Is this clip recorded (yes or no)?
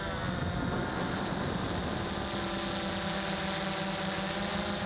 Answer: yes